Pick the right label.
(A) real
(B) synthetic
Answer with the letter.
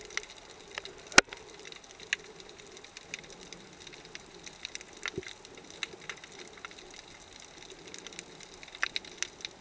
A